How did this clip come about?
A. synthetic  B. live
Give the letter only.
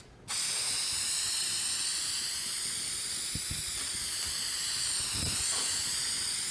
B